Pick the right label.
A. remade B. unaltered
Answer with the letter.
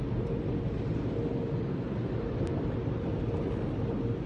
B